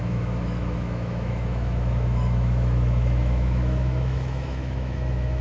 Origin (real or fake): fake